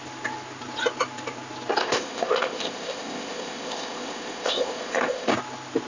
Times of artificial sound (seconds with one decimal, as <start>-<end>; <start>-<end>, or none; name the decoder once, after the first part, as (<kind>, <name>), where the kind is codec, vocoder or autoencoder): 1.8-5.3 (codec, ZipCodec)